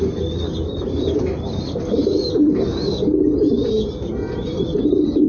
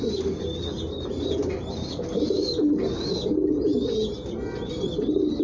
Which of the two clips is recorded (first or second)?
second